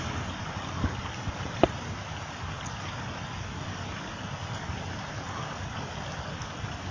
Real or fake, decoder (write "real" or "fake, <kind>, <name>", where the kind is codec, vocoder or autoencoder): real